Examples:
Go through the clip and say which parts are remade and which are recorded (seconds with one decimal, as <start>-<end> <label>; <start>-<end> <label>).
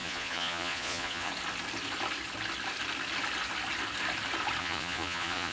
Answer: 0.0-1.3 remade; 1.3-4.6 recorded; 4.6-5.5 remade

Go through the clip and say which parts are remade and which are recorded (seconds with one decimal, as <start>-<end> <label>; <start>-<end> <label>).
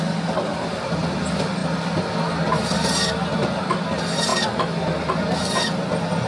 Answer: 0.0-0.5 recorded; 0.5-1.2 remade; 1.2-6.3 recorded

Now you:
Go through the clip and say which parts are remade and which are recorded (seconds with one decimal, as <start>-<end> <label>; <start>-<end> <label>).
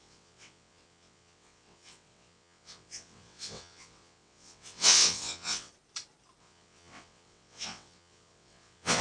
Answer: 0.0-5.7 remade; 5.7-6.4 recorded; 6.4-9.0 remade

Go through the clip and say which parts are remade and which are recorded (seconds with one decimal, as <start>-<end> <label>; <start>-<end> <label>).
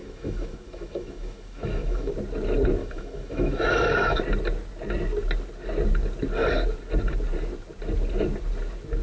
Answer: 0.0-2.1 remade; 2.1-2.8 recorded; 2.8-4.2 remade; 4.2-9.0 recorded